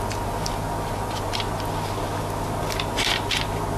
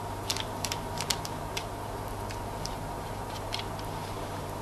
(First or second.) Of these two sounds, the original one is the first